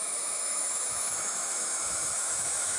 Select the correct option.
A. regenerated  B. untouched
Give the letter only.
A